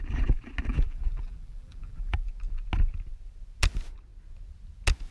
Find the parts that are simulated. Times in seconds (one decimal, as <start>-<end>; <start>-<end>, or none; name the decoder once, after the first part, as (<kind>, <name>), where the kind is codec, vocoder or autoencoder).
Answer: 0.7-2.3 (vocoder, BigVGAN v2)